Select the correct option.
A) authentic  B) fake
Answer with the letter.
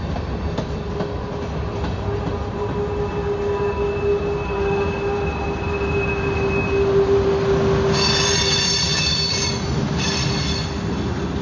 A